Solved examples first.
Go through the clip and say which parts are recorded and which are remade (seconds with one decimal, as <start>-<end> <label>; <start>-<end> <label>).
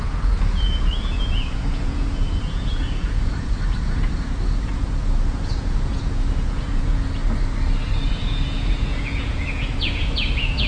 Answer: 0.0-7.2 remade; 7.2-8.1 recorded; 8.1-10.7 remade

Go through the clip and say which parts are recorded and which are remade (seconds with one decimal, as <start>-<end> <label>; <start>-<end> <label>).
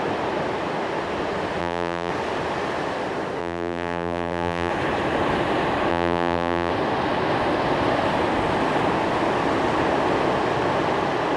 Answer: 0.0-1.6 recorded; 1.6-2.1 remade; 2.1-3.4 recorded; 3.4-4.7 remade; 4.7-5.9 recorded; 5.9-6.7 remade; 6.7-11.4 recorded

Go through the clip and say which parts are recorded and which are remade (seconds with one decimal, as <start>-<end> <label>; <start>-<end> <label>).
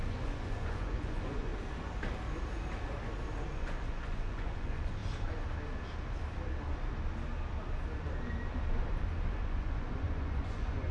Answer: 0.0-1.5 remade; 1.5-3.5 recorded; 3.5-5.0 remade; 5.0-9.4 recorded; 9.4-10.9 remade